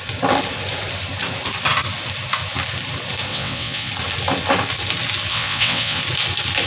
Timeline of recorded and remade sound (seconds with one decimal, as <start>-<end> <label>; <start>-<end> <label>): 0.0-3.3 recorded; 3.3-3.9 remade; 3.9-5.3 recorded; 5.3-6.0 remade; 6.0-6.7 recorded